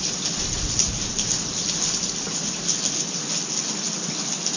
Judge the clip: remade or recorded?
recorded